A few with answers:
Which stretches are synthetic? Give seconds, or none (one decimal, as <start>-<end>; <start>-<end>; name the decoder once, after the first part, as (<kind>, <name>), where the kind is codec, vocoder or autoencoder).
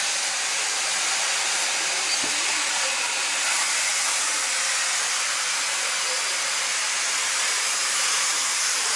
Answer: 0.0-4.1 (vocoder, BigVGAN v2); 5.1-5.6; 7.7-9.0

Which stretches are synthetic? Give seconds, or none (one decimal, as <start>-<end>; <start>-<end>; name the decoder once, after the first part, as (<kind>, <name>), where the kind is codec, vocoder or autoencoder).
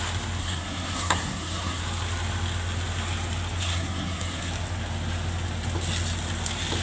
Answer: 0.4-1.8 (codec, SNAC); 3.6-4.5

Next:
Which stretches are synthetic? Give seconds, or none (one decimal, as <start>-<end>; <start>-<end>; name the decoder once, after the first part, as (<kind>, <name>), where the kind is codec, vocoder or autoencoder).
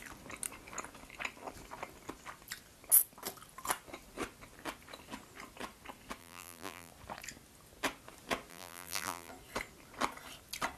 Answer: 6.2-6.9 (vocoder, BigVGAN v2); 8.5-9.3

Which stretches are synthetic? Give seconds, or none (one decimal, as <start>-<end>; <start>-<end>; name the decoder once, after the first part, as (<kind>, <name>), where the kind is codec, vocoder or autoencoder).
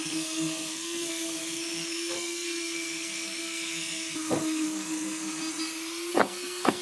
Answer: 0.0-5.4 (codec, SNAC); 6.1-6.8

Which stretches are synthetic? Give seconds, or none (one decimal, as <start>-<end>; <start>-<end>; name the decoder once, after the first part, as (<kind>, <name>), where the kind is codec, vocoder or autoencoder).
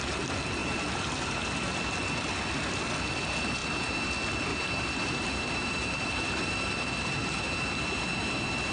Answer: 4.5-6.4 (vocoder, BigVGAN v2)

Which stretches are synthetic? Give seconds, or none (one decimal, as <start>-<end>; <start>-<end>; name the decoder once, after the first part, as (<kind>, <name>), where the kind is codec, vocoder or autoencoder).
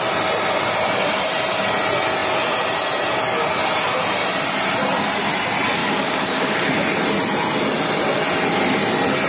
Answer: 5.8-6.7 (codec, DAC)